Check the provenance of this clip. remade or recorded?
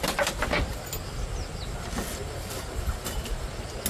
recorded